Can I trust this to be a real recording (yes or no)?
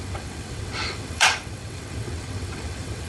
no